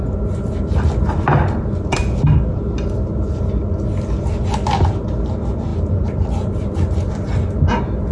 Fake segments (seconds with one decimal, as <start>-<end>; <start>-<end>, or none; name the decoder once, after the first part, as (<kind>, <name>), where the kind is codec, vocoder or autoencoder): none